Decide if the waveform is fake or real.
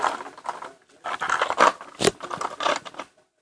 real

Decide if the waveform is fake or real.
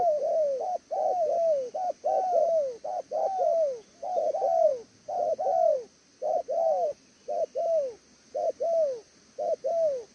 real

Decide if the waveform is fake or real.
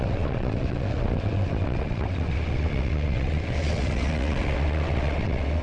fake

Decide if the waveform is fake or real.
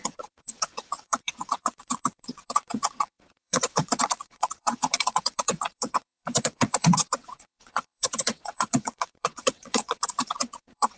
fake